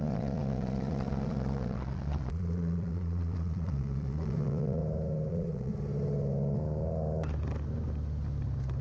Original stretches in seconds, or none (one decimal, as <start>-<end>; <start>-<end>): 4.8-5.3; 5.7-8.8